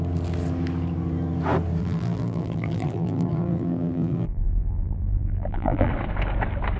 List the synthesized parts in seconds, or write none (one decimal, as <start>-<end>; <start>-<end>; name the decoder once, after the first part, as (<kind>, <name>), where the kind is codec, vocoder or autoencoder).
1.8-5.9 (vocoder, BigVGAN v2)